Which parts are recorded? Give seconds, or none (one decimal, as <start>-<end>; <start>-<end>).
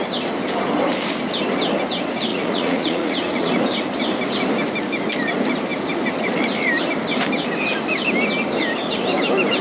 0.0-2.3; 3.5-9.6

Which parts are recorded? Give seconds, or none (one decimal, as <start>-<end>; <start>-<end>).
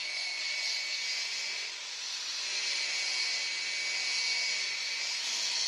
3.4-4.3